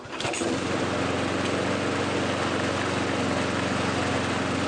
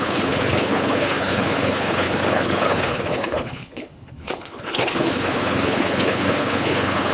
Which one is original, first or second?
first